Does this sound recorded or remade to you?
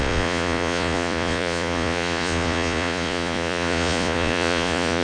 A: remade